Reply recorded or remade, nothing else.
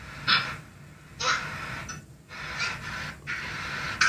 recorded